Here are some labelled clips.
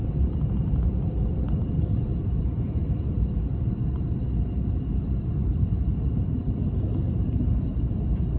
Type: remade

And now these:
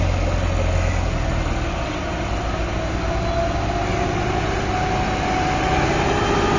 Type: recorded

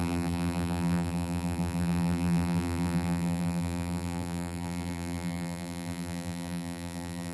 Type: remade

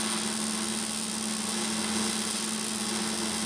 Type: recorded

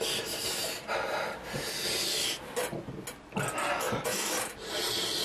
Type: recorded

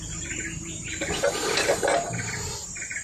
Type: remade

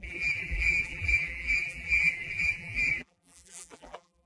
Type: remade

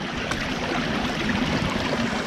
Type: recorded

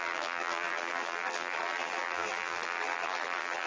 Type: remade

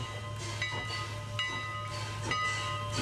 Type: recorded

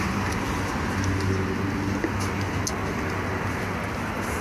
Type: recorded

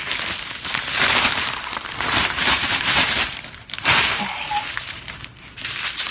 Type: remade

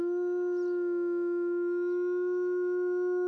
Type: recorded